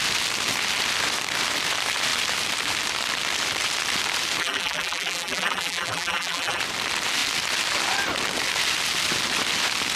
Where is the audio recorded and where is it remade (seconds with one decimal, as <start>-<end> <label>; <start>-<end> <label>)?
0.0-4.4 recorded; 4.4-6.6 remade; 6.6-10.0 recorded